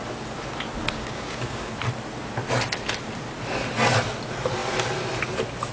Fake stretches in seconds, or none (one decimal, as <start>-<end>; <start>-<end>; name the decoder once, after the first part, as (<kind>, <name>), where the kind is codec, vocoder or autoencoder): 0.8-1.7 (codec, DAC)